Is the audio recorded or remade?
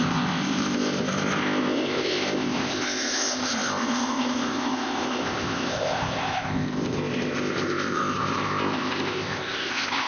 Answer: remade